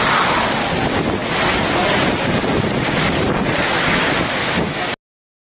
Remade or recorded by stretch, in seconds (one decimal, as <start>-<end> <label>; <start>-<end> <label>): 0.0-5.6 recorded